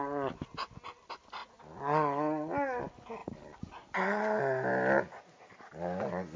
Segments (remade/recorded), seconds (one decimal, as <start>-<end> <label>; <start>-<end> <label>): 0.0-6.4 recorded